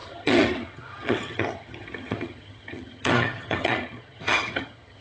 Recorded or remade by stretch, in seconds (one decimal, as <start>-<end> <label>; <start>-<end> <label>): 0.0-5.0 remade